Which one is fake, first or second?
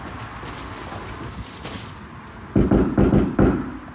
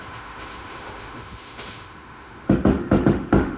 second